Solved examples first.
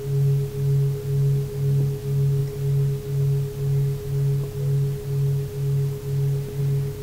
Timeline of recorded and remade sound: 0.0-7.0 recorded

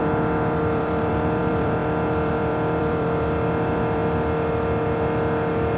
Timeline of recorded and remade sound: 0.0-4.0 remade; 4.0-5.8 recorded

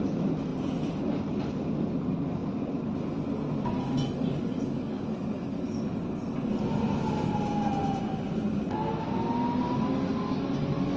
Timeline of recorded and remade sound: 0.0-11.0 recorded